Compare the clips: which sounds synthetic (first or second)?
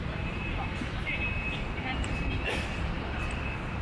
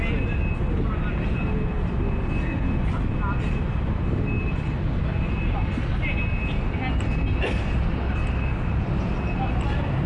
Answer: first